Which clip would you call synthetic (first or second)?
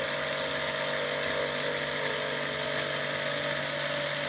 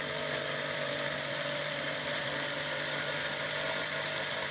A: second